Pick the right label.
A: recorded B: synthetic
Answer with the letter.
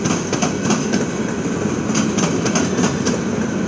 A